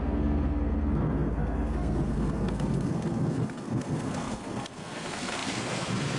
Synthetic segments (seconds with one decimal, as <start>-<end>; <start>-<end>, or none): 0.0-6.2